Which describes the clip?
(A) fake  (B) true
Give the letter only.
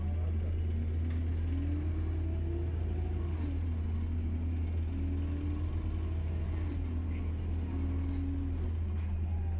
B